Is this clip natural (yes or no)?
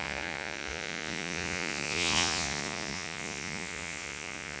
no